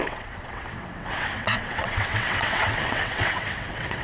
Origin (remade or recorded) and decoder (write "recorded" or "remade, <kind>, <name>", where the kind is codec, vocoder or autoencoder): remade, vocoder, WaveNeXt